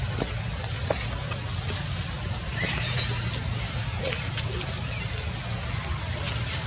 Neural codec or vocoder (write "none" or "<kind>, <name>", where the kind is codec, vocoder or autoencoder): none